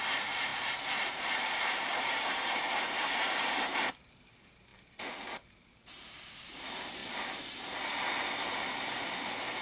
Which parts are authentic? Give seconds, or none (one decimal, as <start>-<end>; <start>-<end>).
4.7-5.3; 7.0-9.6